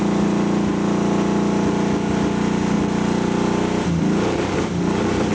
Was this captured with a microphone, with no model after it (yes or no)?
yes